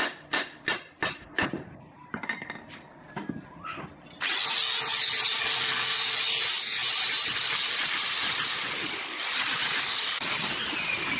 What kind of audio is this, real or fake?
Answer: real